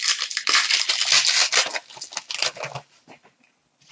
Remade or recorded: recorded